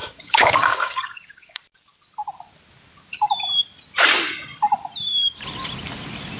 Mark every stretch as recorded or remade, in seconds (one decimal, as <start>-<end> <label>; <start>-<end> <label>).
0.0-1.6 remade; 1.6-6.4 recorded